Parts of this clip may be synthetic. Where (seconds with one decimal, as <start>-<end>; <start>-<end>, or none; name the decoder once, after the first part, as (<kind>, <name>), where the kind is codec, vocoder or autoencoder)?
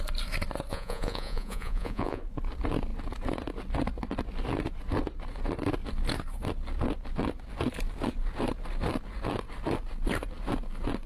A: 0.7-2.2 (vocoder, Vocos)